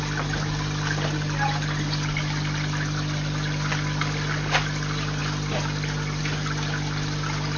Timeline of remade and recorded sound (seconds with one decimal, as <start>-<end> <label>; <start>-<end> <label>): 0.0-7.6 recorded